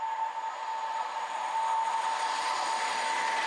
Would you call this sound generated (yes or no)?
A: no